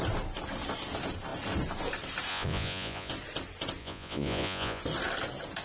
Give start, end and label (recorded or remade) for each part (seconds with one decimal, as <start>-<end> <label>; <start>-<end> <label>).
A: 0.0-2.3 recorded; 2.3-3.1 remade; 3.1-3.8 recorded; 3.8-4.8 remade; 4.8-5.6 recorded